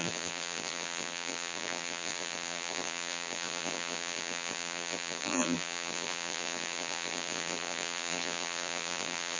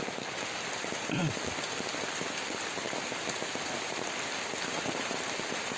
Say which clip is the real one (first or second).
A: second